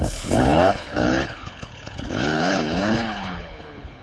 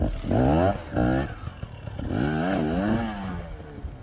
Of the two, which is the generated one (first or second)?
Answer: first